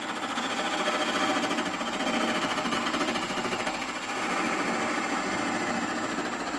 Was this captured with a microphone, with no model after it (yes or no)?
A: yes